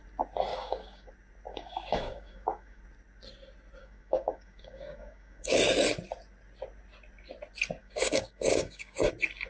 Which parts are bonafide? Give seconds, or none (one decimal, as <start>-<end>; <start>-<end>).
0.0-0.5; 1.1-1.5; 2.8-3.8; 5.6-7.8; 9.1-9.5